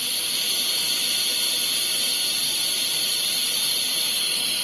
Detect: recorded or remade recorded